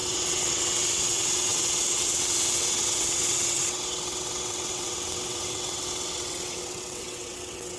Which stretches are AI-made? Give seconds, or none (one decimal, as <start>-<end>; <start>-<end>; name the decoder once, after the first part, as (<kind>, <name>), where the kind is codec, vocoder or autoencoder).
0.0-7.8 (vocoder, WaveNeXt)